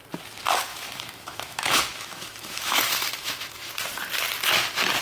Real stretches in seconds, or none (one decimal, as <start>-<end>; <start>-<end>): 0.0-0.7; 3.7-5.0